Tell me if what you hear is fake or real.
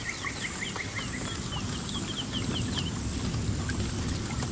real